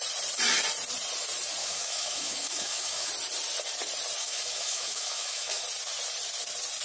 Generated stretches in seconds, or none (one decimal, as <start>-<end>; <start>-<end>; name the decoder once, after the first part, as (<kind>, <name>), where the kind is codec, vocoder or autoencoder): 1.6-3.1 (autoencoder, DAC-VAE); 4.2-5.6